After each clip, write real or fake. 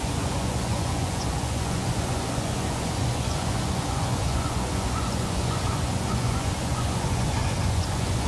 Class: fake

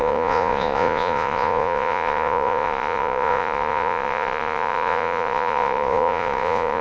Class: fake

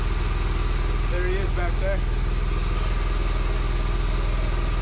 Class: real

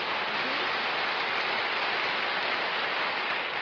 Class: real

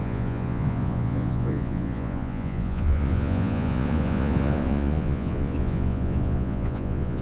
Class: fake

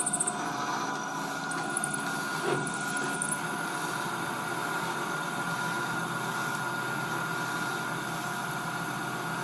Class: real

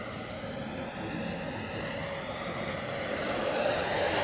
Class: real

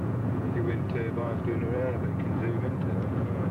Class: fake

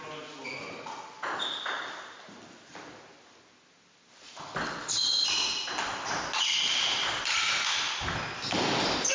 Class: real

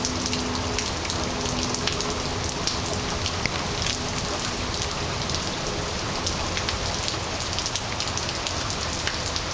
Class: real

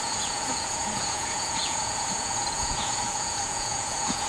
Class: fake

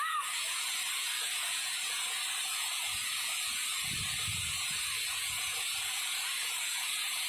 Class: fake